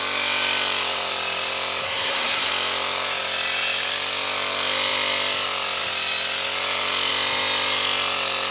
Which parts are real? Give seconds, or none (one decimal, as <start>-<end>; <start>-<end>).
0.0-1.8; 2.5-8.5